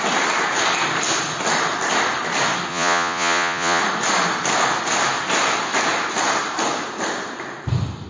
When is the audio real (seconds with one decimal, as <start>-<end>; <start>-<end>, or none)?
0.0-2.7; 3.8-8.1